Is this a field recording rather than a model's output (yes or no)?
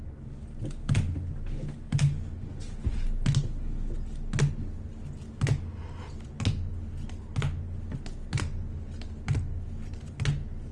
yes